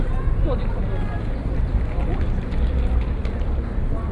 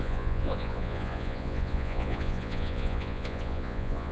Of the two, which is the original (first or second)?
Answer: first